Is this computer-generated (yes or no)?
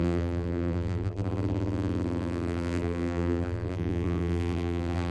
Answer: yes